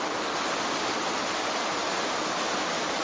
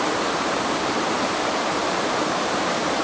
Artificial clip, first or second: second